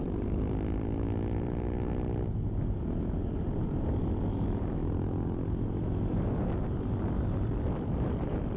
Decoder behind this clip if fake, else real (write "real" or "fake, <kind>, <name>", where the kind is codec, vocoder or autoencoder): real